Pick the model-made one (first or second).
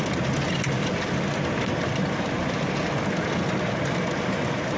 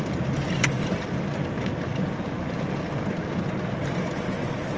second